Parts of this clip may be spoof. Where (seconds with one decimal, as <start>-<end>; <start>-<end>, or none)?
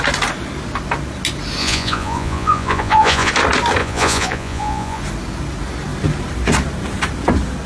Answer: 1.6-3.3; 3.8-5.0